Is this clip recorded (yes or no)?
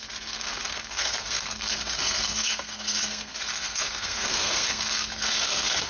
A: no